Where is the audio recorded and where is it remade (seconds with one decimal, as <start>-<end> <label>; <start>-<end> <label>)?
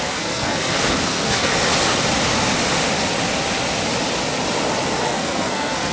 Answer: 0.0-1.5 remade; 1.5-5.0 recorded; 5.0-5.9 remade